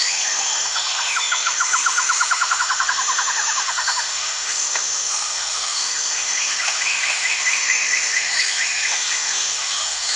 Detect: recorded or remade remade